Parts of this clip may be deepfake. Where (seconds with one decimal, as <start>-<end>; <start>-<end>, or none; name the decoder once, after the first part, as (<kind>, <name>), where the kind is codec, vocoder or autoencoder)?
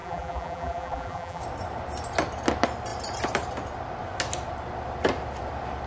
0.0-1.4 (vocoder, BigVGAN v2)